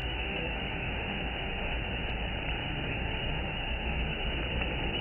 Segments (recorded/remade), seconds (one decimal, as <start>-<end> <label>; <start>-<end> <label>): 0.0-2.1 remade; 2.1-2.6 recorded; 2.6-4.4 remade; 4.4-5.0 recorded